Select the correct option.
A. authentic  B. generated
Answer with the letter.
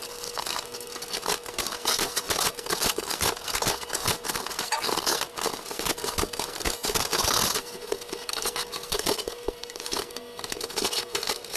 B